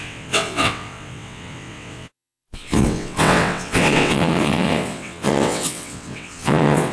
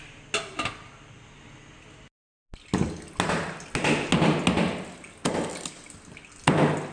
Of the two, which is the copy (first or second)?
first